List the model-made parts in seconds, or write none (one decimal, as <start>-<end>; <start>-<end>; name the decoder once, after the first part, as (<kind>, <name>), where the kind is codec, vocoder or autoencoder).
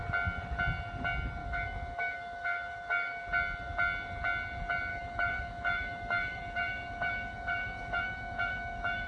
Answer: 1.4-3.2 (autoencoder, DAC-VAE); 4.9-9.1